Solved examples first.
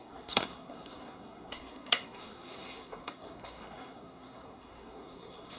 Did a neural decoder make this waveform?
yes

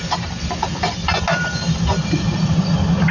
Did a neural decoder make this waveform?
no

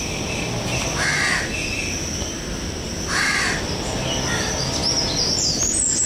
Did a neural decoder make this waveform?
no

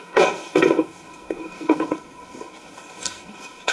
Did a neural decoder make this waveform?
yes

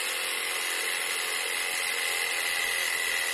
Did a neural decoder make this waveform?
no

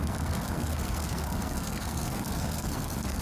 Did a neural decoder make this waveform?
yes